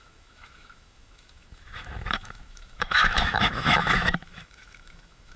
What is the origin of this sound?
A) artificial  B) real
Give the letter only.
A